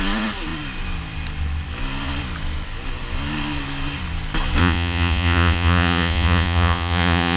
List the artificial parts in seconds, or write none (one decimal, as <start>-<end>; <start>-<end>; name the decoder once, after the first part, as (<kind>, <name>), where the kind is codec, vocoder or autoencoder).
4.6-7.4 (vocoder, Vocos)